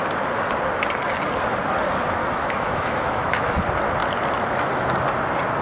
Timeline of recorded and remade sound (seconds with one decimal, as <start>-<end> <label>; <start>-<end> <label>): 0.0-2.2 recorded; 2.2-3.6 remade; 3.6-5.6 recorded